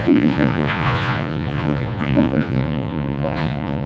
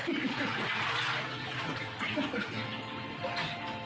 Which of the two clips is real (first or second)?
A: second